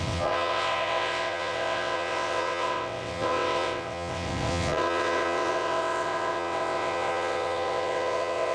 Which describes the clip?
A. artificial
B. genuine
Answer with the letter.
A